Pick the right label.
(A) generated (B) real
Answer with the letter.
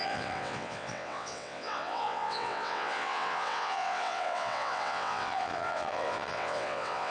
A